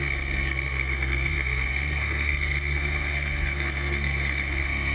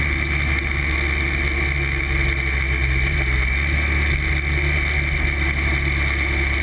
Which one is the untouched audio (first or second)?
second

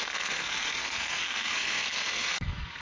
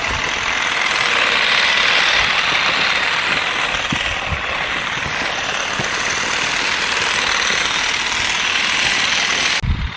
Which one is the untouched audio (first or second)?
second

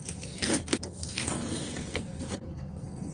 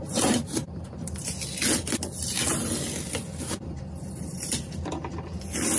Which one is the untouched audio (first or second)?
second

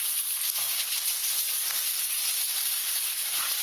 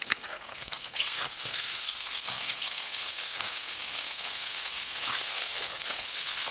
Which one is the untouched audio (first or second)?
first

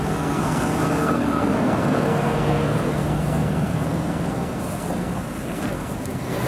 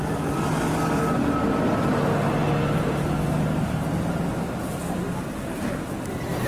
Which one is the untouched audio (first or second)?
second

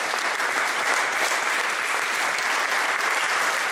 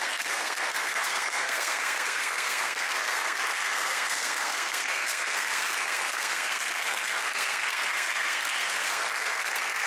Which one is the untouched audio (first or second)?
first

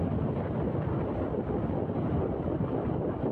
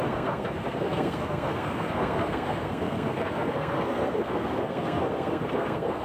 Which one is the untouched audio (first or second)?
first